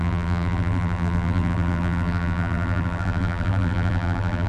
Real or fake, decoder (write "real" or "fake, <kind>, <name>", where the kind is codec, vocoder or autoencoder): fake, vocoder, BigVGAN v2